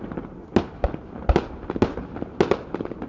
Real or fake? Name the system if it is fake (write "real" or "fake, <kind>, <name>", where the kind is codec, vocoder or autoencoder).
real